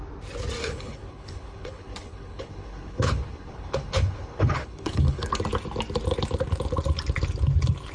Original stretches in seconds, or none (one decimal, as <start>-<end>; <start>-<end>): 0.0-0.6; 5.3-7.9